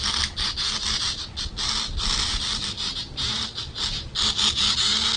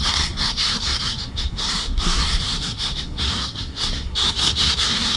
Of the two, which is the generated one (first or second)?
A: second